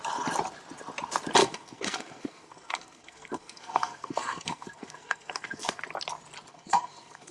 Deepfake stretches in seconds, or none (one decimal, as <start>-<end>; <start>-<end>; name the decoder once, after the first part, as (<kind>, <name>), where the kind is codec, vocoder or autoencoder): 1.4-5.8 (codec, SNAC); 6.5-7.3